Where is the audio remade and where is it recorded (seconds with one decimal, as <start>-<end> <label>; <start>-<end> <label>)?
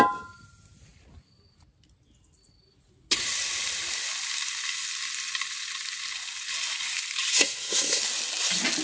0.0-7.3 recorded; 7.3-8.0 remade; 8.0-8.8 recorded